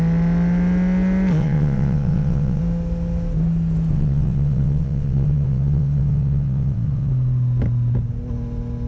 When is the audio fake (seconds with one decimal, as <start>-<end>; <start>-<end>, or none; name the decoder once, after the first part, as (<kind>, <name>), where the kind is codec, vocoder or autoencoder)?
1.4-2.6 (vocoder, WaveNeXt); 3.9-7.1